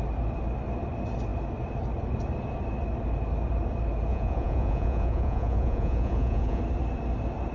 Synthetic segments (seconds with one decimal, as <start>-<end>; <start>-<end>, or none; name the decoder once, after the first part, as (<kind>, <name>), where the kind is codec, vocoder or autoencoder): 4.1-6.6 (vocoder, Vocos)